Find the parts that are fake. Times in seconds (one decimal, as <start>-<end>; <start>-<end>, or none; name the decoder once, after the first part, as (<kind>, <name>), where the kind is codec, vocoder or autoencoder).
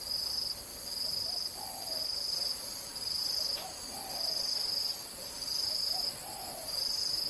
none